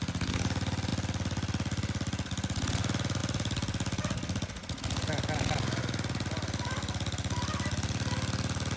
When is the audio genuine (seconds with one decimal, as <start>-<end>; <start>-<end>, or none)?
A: 0.0-8.8